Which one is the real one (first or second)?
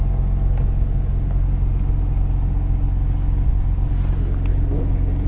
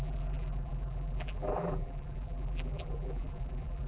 first